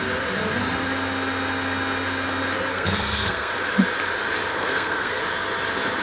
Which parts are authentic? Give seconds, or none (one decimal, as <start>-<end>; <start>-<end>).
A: 0.0-2.7; 3.5-4.5; 5.2-6.0